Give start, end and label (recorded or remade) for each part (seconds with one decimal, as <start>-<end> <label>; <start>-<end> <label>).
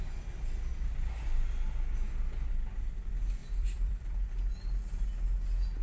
0.0-3.4 recorded; 3.4-4.3 remade; 4.3-5.8 recorded